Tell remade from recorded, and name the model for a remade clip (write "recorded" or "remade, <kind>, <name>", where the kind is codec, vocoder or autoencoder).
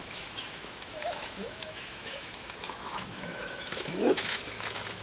remade, autoencoder, DAC-VAE